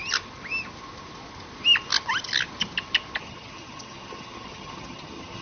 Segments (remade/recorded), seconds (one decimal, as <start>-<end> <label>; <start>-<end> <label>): 0.0-3.2 recorded; 3.2-5.4 remade